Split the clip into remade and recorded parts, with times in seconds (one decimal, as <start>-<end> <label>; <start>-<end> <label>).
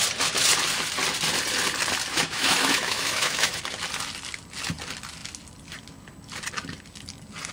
0.0-2.1 recorded; 2.1-3.6 remade; 3.6-7.5 recorded